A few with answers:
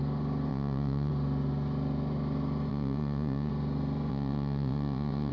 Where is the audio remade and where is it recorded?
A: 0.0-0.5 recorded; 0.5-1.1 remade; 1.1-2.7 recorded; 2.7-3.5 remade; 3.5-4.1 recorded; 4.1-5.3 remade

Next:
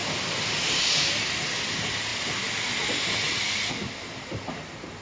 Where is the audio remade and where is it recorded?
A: 0.0-5.0 recorded

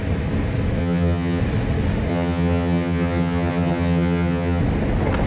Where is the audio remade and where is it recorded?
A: 0.0-0.8 recorded; 0.8-1.4 remade; 1.4-2.1 recorded; 2.1-4.6 remade; 4.6-5.3 recorded